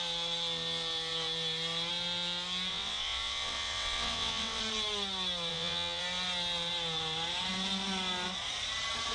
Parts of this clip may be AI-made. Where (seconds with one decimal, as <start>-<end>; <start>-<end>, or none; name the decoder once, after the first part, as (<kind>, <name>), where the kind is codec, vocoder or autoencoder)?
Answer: 2.7-4.6 (vocoder, WaveNeXt); 5.5-6.0